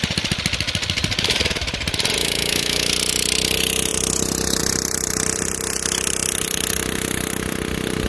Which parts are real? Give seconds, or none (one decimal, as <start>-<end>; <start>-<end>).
0.0-2.2; 2.9-8.1